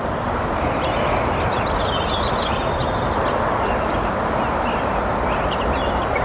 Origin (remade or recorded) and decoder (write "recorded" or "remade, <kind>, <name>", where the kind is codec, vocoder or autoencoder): recorded